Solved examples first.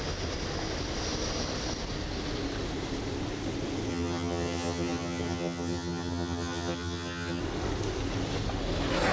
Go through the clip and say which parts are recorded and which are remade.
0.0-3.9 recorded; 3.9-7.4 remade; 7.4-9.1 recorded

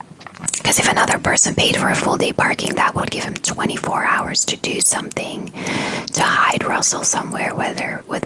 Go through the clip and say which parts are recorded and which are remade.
0.0-3.0 remade; 3.0-7.0 recorded; 7.0-8.3 remade

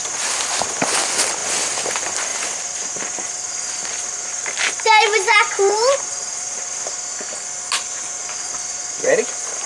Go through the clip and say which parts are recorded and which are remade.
0.0-2.3 recorded; 2.3-6.9 remade; 6.9-9.7 recorded

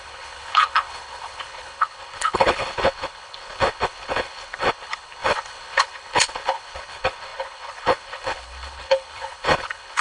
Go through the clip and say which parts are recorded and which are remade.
0.0-10.0 remade

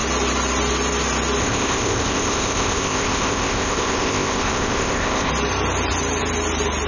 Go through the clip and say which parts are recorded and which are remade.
0.0-1.4 recorded; 1.4-5.3 remade; 5.3-6.9 recorded